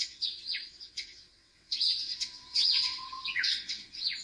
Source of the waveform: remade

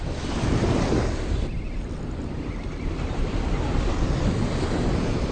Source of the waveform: recorded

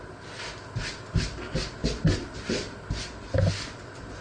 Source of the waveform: recorded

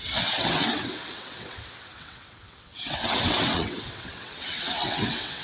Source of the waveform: remade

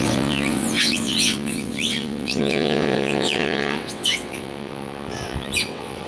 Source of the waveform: remade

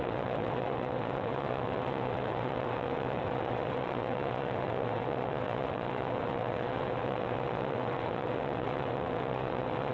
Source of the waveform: remade